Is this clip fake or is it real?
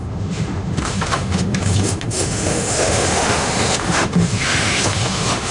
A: fake